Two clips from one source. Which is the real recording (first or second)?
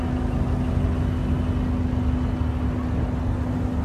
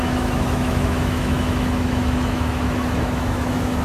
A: first